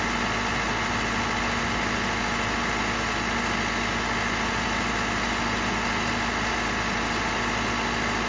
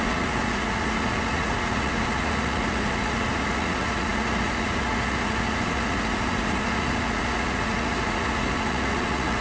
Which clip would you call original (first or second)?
first